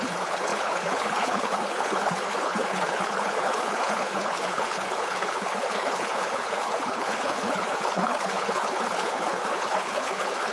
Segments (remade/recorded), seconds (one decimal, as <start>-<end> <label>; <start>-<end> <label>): 0.0-10.5 remade